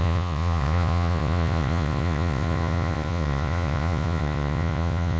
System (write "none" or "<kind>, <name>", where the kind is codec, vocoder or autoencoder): vocoder, Vocos